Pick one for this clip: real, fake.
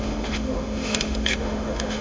fake